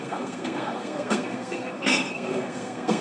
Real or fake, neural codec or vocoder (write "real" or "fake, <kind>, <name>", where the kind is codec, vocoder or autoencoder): fake, codec, SNAC